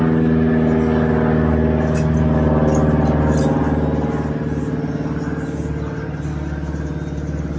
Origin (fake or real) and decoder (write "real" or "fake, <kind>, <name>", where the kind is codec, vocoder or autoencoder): real